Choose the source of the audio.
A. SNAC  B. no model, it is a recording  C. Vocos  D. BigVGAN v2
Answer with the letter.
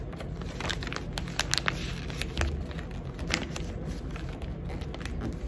B